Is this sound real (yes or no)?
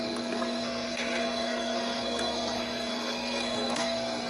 no